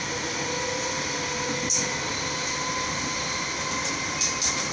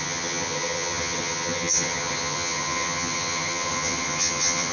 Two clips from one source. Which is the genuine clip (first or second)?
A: first